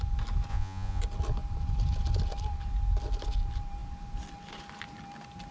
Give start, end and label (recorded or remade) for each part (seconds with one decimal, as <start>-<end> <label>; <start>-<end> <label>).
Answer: 0.0-0.5 recorded; 0.5-1.0 remade; 1.0-5.5 recorded